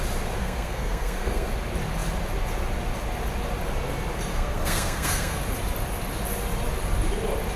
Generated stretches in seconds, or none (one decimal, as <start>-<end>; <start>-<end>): 0.4-1.5; 4.3-5.4